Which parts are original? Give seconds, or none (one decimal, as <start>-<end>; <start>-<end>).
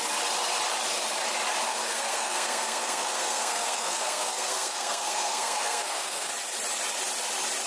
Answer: 0.0-1.7; 6.3-7.7